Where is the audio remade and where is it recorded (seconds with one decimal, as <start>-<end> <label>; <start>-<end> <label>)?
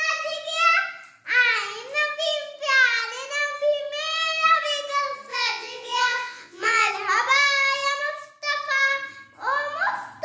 0.0-5.3 recorded; 5.3-6.9 remade; 6.9-10.2 recorded